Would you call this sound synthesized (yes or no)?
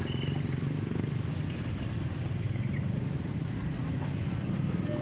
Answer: no